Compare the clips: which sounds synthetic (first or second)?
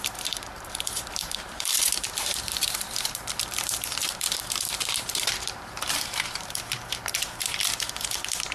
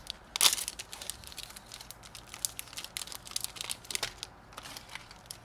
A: first